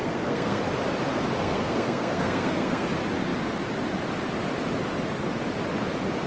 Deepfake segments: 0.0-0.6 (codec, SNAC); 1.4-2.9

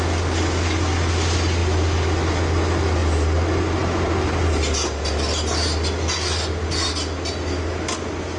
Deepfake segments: none

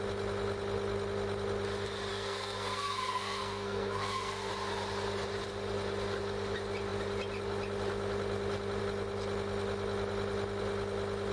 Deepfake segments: 2.1-4.5 (codec, SNAC)